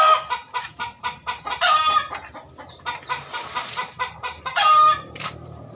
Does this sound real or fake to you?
fake